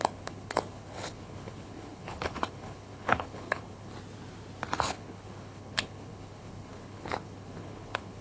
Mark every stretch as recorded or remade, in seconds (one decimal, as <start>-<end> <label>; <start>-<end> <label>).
0.0-3.9 remade; 3.9-4.8 recorded; 4.8-8.2 remade